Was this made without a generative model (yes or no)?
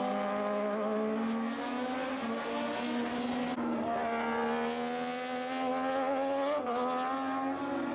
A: yes